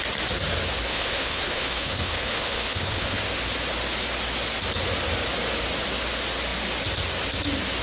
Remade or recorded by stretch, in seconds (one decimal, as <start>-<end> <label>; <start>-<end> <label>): 0.0-0.9 recorded; 0.9-3.2 remade; 3.2-7.8 recorded